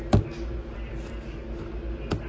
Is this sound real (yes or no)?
yes